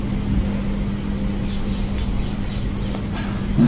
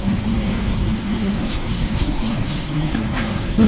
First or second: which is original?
first